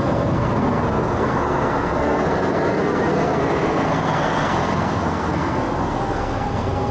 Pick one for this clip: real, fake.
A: fake